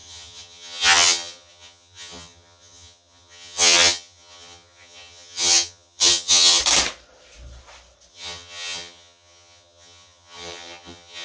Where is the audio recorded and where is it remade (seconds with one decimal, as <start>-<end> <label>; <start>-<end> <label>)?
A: 0.0-6.6 remade; 6.6-8.1 recorded; 8.1-11.2 remade